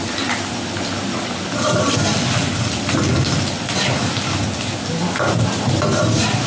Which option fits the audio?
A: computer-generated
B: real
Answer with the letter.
B